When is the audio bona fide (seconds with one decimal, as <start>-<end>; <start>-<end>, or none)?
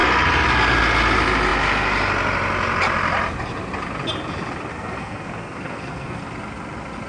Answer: 0.0-4.7; 6.2-7.1